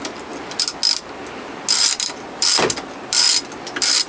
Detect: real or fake real